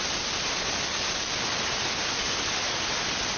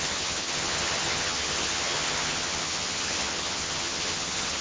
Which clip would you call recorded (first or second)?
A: first